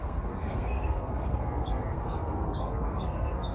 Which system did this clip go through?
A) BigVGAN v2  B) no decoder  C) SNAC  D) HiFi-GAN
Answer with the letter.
C